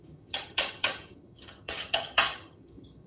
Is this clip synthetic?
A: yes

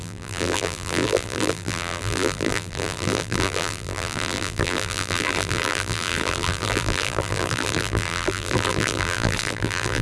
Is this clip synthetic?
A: yes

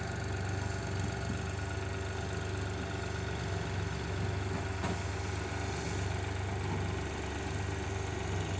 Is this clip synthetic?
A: no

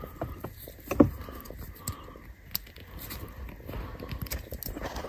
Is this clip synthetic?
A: no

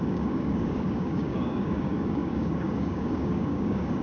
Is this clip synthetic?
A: yes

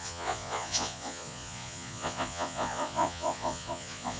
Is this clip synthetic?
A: yes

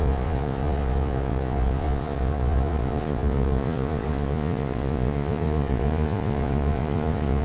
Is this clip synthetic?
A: yes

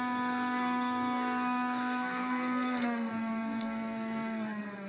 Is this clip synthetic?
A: yes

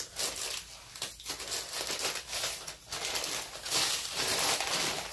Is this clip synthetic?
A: no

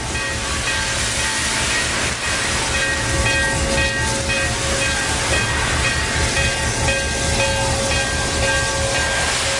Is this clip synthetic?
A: no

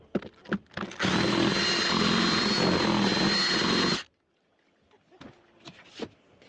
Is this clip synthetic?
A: no